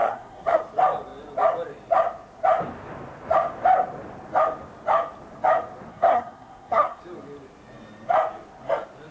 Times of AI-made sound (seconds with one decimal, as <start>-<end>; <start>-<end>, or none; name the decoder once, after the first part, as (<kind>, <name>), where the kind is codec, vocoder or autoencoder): 0.0-0.6 (codec, SNAC); 5.9-7.0